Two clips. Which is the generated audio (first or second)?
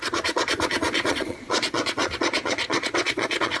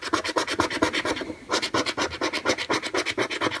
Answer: first